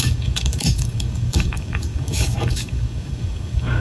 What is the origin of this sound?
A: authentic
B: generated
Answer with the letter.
B